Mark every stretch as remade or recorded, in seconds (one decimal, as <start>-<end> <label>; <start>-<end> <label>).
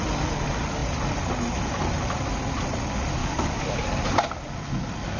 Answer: 0.0-3.2 recorded; 3.2-3.9 remade; 3.9-5.2 recorded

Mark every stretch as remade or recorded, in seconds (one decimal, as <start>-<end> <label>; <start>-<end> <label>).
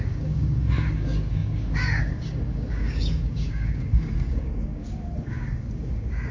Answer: 0.0-6.3 remade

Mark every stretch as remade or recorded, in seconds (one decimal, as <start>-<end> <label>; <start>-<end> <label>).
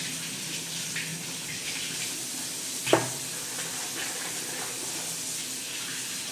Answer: 0.0-6.3 recorded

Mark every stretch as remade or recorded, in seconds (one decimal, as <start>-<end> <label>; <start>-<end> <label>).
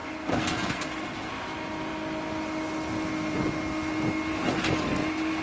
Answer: 0.0-1.3 remade; 1.3-5.4 recorded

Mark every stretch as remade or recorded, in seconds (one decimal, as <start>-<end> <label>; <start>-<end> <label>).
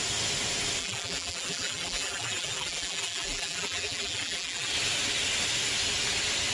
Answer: 0.0-0.8 recorded; 0.8-4.7 remade; 4.7-6.5 recorded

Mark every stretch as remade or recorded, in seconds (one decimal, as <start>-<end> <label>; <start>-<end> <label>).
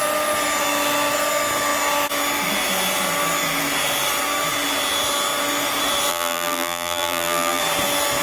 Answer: 0.0-6.1 recorded; 6.1-7.6 remade; 7.6-8.2 recorded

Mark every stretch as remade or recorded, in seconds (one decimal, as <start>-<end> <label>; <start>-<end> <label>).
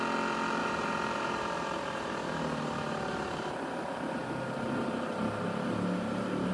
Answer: 0.0-0.6 recorded; 0.6-4.5 remade; 4.5-6.5 recorded